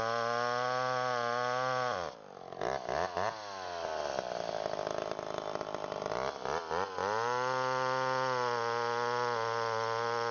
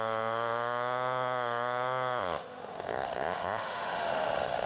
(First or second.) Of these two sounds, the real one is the first